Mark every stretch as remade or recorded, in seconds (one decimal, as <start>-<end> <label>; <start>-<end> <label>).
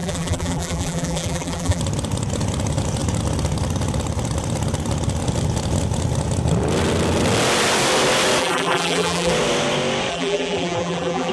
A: 0.0-1.8 remade; 1.8-8.4 recorded; 8.4-9.3 remade; 9.3-10.1 recorded; 10.1-11.3 remade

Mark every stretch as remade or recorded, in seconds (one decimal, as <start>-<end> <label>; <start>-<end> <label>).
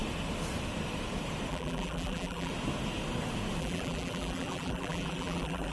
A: 0.0-1.5 recorded; 1.5-2.5 remade; 2.5-3.6 recorded; 3.6-5.7 remade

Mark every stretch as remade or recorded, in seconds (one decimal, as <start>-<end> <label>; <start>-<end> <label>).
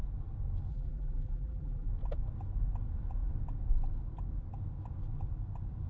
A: 0.0-0.7 recorded; 0.7-1.9 remade; 1.9-5.9 recorded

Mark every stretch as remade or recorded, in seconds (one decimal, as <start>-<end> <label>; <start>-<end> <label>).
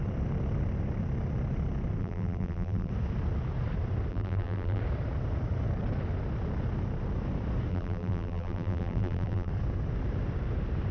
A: 0.0-2.0 recorded; 2.0-2.9 remade; 2.9-4.1 recorded; 4.1-4.8 remade; 4.8-7.7 recorded; 7.7-9.5 remade; 9.5-10.9 recorded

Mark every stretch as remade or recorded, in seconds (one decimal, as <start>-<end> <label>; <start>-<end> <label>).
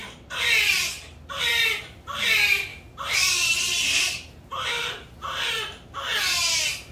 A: 0.0-6.1 remade; 6.1-6.9 recorded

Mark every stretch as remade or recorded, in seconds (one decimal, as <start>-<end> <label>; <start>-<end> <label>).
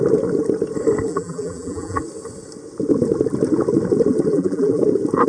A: 0.0-1.1 recorded; 1.1-2.0 remade; 2.0-4.3 recorded; 4.3-4.8 remade; 4.8-5.3 recorded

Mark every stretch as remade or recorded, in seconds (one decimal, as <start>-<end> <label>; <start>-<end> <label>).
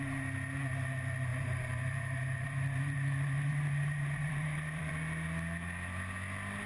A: 0.0-1.3 recorded; 1.3-4.9 remade; 4.9-6.7 recorded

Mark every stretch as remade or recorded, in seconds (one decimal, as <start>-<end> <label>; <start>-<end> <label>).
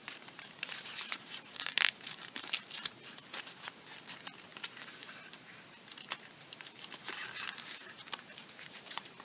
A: 0.0-3.8 remade; 3.8-4.5 recorded; 4.5-6.9 remade; 6.9-7.8 recorded; 7.8-9.2 remade